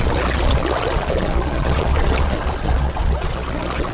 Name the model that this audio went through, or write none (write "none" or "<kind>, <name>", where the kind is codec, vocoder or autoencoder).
vocoder, Vocos